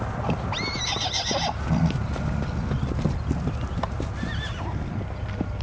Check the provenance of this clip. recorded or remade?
recorded